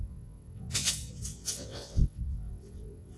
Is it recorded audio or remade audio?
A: remade